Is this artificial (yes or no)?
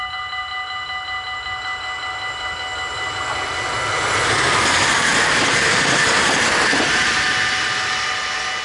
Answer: no